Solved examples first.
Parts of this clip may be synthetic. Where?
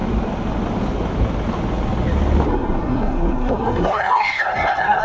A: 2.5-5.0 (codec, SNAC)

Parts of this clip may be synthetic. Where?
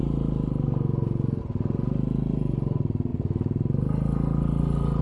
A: none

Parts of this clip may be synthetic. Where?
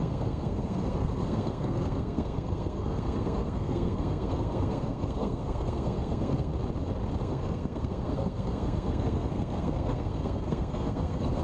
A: 0.0-6.5 (codec, SNAC); 7.2-11.4